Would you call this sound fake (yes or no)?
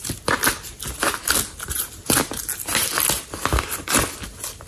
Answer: no